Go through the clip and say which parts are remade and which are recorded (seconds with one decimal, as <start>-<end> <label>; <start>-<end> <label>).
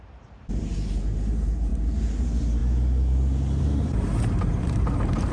0.0-2.6 remade; 2.6-3.6 recorded; 3.6-5.3 remade